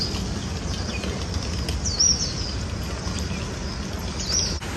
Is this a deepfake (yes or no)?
no